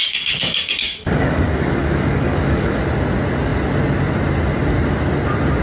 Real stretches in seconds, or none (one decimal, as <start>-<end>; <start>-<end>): 2.8-5.6